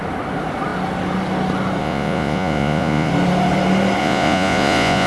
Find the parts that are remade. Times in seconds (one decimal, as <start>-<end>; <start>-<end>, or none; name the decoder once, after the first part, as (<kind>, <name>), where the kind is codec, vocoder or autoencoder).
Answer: 1.8-3.1 (vocoder, Vocos); 4.0-5.1